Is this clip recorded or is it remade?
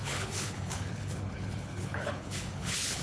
remade